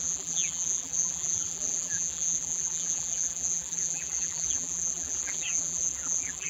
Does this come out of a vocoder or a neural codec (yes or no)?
yes